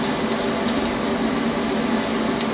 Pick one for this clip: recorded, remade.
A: recorded